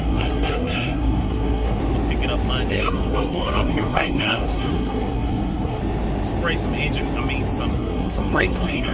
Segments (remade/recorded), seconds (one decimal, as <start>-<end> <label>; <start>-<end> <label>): 0.0-1.8 remade; 1.8-2.7 recorded; 2.7-5.8 remade; 5.8-7.7 recorded; 7.7-8.9 remade